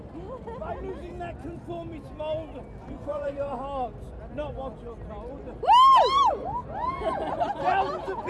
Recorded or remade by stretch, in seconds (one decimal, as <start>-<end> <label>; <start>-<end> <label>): 0.0-2.8 recorded; 2.8-3.6 remade; 3.6-8.3 recorded